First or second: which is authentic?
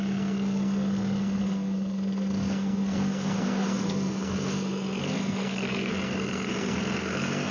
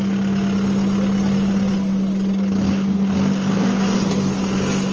second